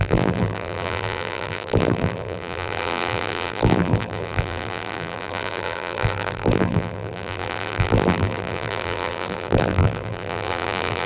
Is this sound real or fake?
fake